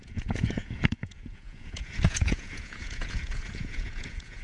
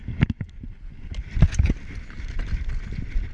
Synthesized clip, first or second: first